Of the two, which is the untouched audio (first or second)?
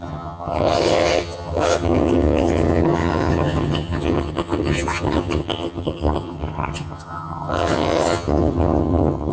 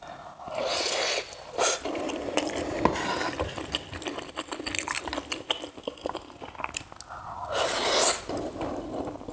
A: second